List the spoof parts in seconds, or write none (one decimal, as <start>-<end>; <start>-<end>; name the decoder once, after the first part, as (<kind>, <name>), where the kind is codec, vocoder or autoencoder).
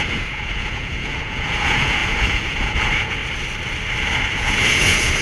0.0-3.2 (vocoder, Vocos); 4.0-5.2